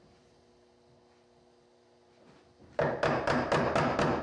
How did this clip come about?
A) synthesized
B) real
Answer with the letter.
B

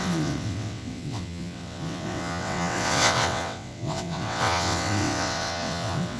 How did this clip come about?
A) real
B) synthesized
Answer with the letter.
B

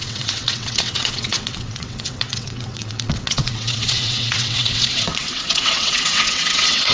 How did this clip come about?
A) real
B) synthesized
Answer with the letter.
B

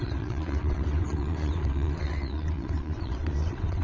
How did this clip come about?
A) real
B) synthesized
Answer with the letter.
B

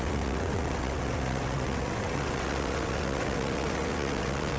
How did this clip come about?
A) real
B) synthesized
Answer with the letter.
B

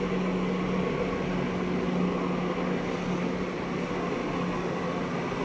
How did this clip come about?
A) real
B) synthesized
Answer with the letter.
A